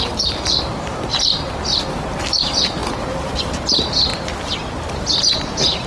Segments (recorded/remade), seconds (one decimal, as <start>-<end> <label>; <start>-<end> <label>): 0.0-1.1 remade; 1.1-1.8 recorded; 1.8-4.1 remade; 4.1-4.7 recorded; 4.7-5.9 remade